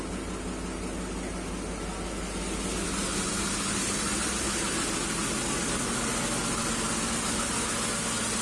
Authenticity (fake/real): real